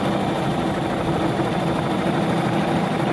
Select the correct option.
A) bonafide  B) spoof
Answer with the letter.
A